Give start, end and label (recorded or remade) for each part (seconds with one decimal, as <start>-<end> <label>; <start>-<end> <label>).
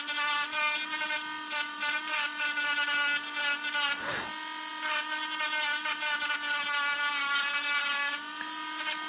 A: 0.0-9.1 recorded